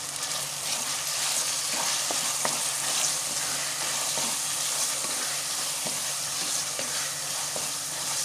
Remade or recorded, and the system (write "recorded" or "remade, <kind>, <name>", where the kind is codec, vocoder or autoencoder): remade, vocoder, BigVGAN v2